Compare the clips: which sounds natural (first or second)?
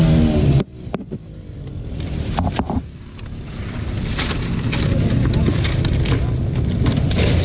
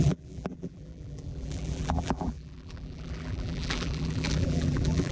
first